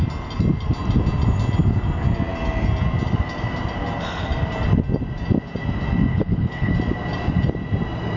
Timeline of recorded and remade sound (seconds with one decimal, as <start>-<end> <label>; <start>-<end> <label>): 0.0-6.1 recorded; 6.1-6.7 remade; 6.7-8.2 recorded